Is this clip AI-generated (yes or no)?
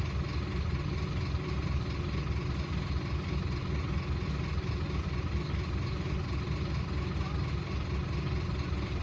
no